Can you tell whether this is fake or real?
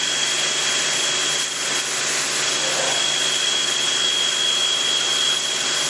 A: real